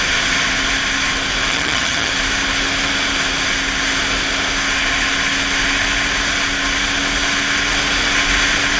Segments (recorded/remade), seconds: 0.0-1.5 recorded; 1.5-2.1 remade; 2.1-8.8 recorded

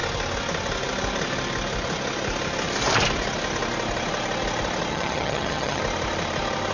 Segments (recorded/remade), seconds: 0.0-4.9 recorded; 4.9-5.8 remade; 5.8-6.7 recorded

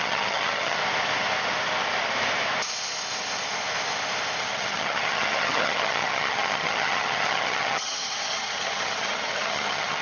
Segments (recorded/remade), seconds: 0.0-0.8 remade; 0.8-4.4 recorded; 4.4-10.0 remade

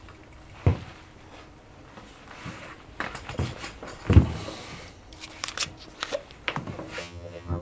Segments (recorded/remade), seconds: 0.0-7.0 recorded; 7.0-7.6 remade